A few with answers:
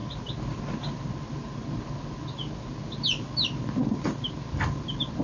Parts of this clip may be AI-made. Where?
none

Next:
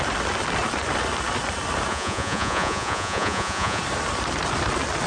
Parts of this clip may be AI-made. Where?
1.9-3.8 (vocoder, Vocos)

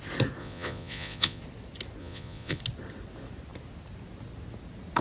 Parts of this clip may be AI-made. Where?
0.4-1.4 (vocoder, Vocos); 2.0-2.6

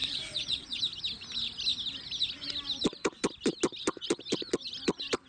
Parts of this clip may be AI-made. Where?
0.0-0.8 (vocoder, Vocos)

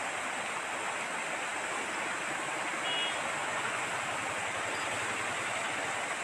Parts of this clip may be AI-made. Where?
3.4-3.9 (vocoder, Vocos)

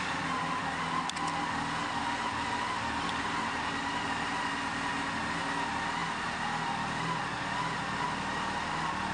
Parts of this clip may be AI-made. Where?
none

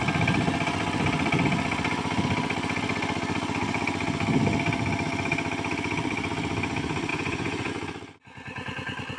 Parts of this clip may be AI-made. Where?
7.1-7.7 (vocoder, Vocos)

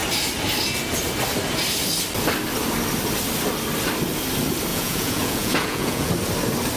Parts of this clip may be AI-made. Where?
4.7-6.1 (vocoder, Vocos)